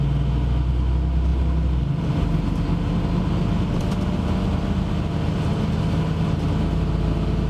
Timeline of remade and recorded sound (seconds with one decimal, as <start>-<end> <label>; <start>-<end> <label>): 0.0-7.5 recorded